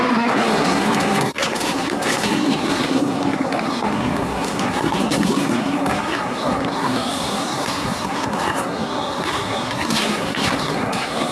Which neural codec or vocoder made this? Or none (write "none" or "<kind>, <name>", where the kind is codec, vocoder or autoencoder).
codec, SNAC